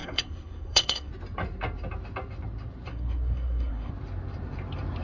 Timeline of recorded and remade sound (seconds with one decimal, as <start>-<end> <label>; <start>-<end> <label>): 0.0-1.1 remade; 1.1-2.9 recorded; 2.9-3.9 remade; 3.9-5.0 recorded